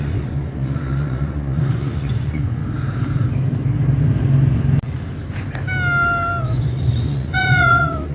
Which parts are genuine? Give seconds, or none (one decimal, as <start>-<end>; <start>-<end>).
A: 2.6-6.4